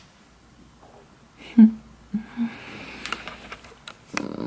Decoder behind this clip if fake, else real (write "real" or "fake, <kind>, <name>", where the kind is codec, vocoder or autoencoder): real